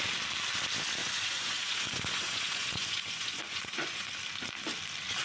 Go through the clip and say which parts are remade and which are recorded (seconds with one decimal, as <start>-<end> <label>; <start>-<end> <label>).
0.0-1.0 recorded; 1.0-4.1 remade; 4.1-5.2 recorded